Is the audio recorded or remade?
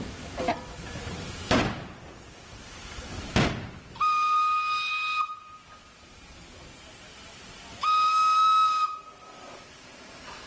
recorded